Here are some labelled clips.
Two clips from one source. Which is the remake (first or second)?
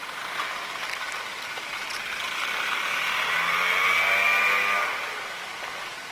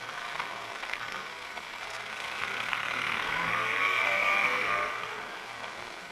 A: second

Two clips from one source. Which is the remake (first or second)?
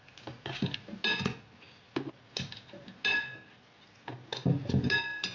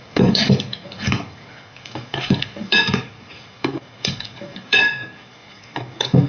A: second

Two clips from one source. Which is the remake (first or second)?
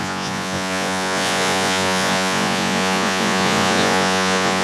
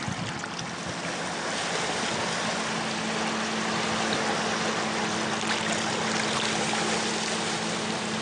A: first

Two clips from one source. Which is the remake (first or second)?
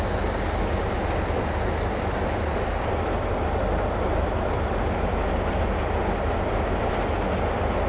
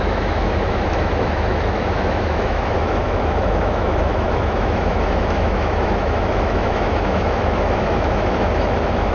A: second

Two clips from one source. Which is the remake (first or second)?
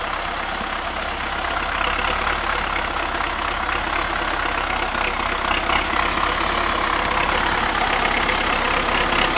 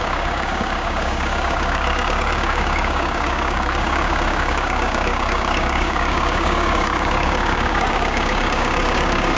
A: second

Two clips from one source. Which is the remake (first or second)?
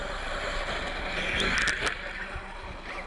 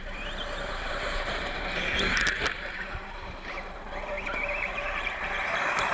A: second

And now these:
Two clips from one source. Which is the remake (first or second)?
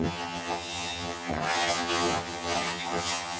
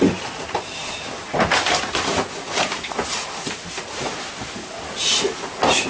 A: first